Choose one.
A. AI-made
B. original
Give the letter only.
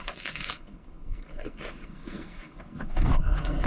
A